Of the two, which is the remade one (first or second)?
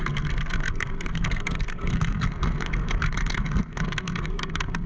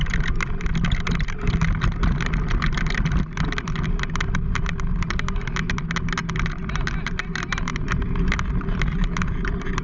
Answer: first